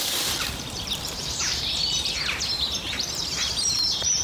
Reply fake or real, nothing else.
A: fake